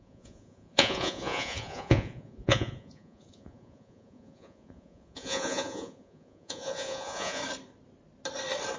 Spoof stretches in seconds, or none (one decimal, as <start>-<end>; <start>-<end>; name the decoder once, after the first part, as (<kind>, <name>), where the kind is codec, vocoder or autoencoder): 0.0-7.4 (vocoder, Vocos)